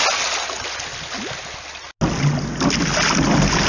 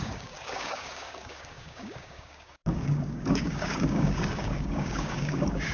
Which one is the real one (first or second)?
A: first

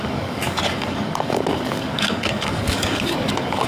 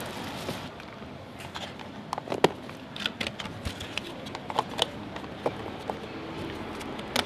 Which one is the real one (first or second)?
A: second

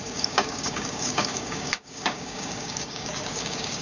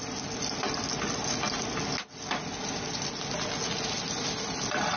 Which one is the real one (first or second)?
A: second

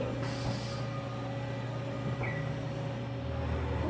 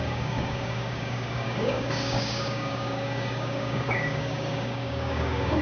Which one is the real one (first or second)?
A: first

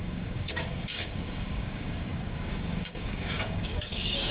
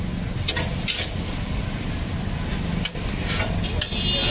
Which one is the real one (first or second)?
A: second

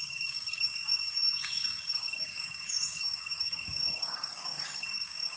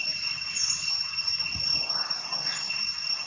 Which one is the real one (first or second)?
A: second